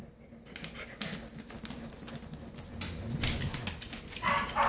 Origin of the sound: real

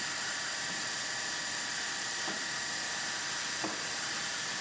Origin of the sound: real